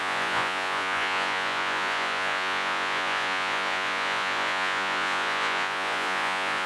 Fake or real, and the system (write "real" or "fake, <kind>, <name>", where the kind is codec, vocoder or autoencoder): fake, vocoder, Vocos